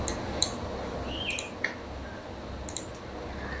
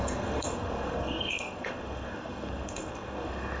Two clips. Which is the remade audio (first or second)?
second